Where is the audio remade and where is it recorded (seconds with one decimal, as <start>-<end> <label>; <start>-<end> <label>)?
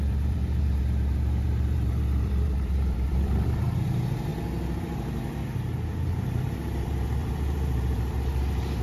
0.0-4.3 remade; 4.3-4.8 recorded; 4.8-8.8 remade